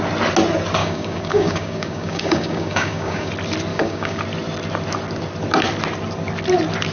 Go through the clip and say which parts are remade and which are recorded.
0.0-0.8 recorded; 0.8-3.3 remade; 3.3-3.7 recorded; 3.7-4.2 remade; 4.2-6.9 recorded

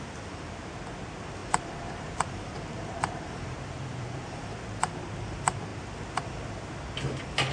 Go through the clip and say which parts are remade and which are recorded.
0.0-1.4 recorded; 1.4-4.9 remade; 4.9-7.5 recorded

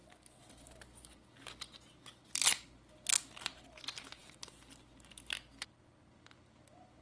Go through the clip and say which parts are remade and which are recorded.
0.0-7.0 recorded

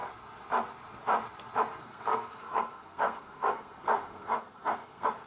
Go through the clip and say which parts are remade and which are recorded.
0.0-1.8 recorded; 1.8-5.3 remade

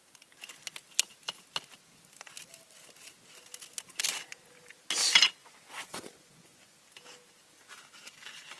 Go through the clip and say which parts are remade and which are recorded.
0.0-5.4 recorded; 5.4-6.8 remade; 6.8-8.6 recorded

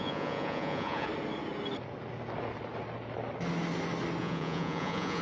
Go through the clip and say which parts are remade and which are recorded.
0.0-1.1 remade; 1.1-4.2 recorded; 4.2-5.2 remade

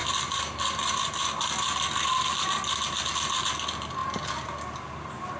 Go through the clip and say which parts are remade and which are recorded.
0.0-2.3 remade; 2.3-4.0 recorded; 4.0-4.6 remade; 4.6-5.4 recorded

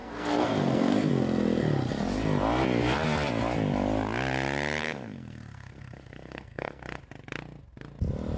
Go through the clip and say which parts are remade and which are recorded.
0.0-1.1 remade; 1.1-4.8 recorded; 4.8-7.0 remade; 7.0-8.4 recorded